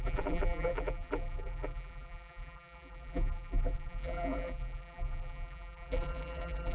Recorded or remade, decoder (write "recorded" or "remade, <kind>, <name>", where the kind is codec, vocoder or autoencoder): remade, vocoder, BigVGAN v2